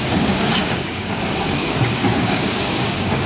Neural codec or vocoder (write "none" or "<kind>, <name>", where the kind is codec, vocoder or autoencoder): codec, DAC